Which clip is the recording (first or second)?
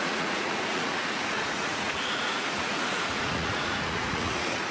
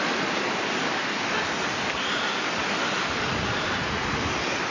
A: second